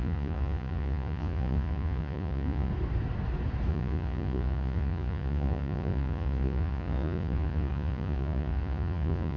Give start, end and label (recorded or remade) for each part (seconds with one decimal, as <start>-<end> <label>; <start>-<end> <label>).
0.0-2.7 remade; 2.7-3.7 recorded; 3.7-9.4 remade

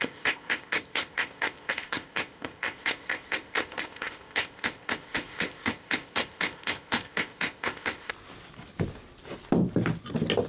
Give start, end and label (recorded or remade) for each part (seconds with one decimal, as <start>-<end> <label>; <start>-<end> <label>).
0.0-8.1 remade; 8.1-10.5 recorded

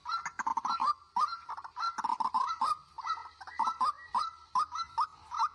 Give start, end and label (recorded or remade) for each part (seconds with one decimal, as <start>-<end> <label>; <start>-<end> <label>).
0.0-5.5 recorded

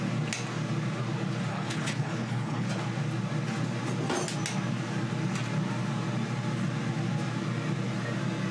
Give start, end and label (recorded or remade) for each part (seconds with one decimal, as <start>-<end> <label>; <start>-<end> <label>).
0.0-1.5 recorded; 1.5-2.7 remade; 2.7-8.5 recorded

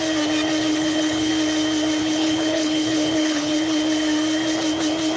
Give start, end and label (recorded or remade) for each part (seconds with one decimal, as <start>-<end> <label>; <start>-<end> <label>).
0.0-0.7 recorded; 0.7-1.3 remade; 1.3-2.0 recorded; 2.0-3.8 remade; 3.8-5.2 recorded

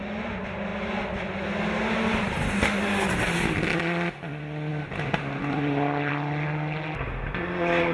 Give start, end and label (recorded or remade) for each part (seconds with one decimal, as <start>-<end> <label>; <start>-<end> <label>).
0.0-7.9 recorded